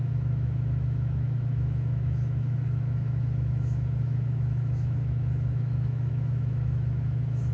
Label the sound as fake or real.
fake